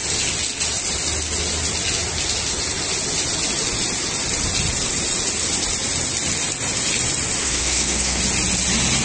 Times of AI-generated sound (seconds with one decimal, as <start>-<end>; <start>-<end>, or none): 7.4-8.2